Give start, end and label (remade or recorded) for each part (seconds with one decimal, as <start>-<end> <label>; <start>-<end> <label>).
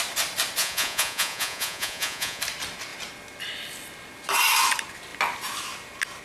0.0-0.6 recorded; 0.6-2.4 remade; 2.4-6.2 recorded